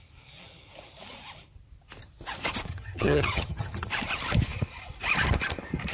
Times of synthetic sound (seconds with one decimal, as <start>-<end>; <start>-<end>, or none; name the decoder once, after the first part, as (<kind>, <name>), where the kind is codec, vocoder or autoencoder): 2.7-3.9 (vocoder, HiFi-GAN)

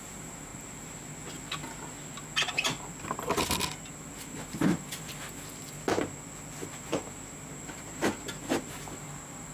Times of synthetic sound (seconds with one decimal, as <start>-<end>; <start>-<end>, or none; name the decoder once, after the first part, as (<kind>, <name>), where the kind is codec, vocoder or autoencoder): 0.0-0.5 (vocoder, BigVGAN v2); 3.9-5.1; 6.8-9.5